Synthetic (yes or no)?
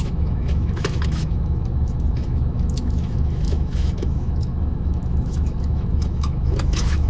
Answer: yes